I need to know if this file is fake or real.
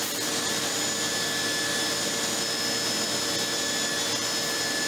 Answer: real